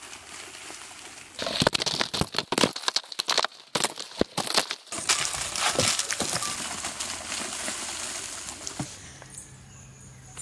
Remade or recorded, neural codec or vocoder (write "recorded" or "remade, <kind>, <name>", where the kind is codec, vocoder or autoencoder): recorded